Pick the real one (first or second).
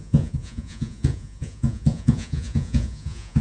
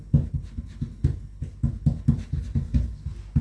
second